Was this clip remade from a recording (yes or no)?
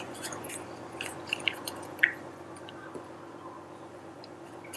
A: yes